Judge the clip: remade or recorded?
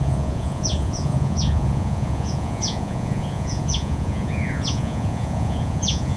remade